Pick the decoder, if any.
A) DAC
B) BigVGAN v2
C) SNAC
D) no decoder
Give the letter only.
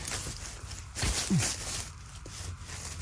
D